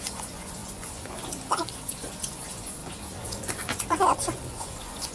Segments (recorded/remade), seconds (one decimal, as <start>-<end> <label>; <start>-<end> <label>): 0.0-5.1 remade